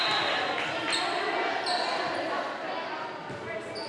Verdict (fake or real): real